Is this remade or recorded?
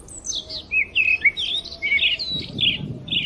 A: recorded